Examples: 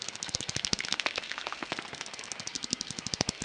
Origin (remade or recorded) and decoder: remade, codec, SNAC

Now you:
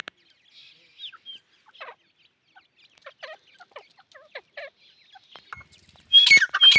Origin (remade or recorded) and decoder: recorded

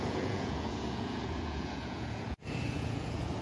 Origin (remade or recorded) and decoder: remade, vocoder, Vocos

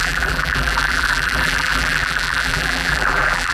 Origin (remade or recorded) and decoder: remade, vocoder, BigVGAN v2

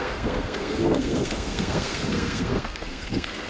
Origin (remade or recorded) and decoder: remade, codec, SNAC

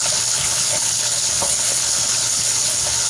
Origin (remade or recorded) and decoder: remade, codec, HILCodec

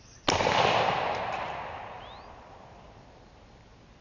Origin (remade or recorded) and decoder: recorded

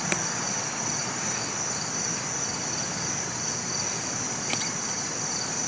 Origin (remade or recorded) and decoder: recorded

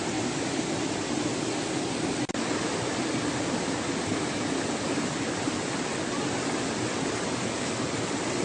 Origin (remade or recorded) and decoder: recorded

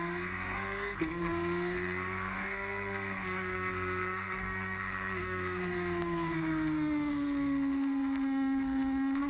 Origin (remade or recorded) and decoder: remade, codec, SNAC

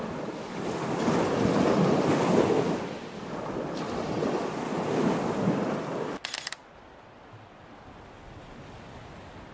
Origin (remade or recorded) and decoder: recorded